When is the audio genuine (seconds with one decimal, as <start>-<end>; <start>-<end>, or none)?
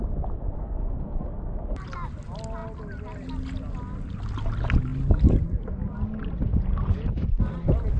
0.0-0.6; 1.6-8.0